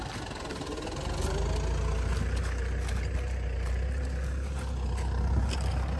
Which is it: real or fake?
real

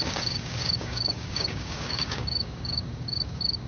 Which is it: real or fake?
fake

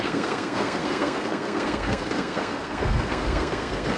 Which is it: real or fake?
fake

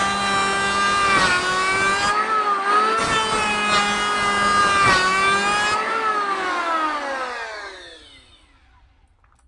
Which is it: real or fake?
real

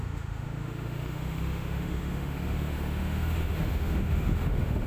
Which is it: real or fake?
fake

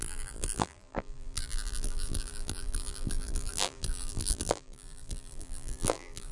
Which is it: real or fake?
fake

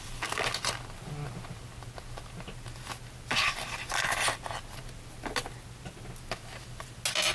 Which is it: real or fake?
real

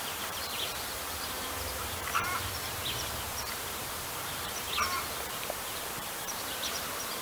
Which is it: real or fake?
fake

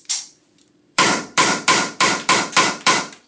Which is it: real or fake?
fake